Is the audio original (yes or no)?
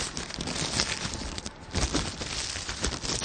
yes